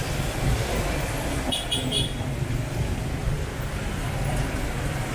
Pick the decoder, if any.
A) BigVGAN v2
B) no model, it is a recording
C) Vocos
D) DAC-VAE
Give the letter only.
B